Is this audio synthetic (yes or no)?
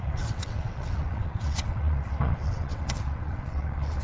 yes